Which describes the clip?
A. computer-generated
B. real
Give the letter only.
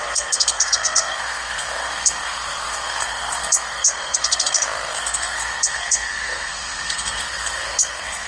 A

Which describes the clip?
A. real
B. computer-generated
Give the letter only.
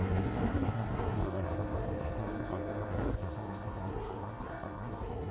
B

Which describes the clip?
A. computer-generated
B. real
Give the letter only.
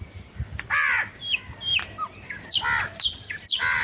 B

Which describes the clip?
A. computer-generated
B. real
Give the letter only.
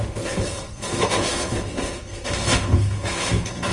A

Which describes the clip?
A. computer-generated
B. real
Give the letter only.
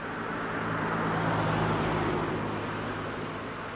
B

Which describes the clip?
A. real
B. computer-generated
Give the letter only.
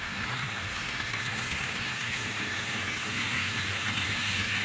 B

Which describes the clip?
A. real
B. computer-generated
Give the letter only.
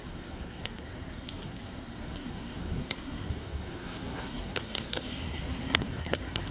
B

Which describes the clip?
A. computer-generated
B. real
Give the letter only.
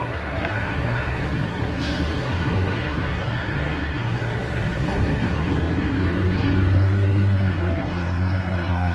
A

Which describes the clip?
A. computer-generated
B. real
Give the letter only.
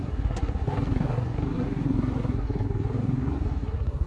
A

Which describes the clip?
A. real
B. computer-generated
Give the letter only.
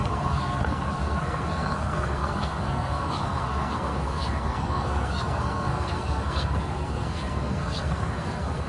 B